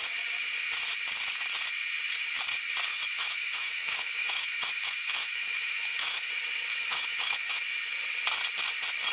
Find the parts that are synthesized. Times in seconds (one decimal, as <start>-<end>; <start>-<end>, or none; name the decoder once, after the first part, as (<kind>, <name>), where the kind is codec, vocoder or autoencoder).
2.9-6.3 (autoencoder, DAC-VAE); 6.7-7.6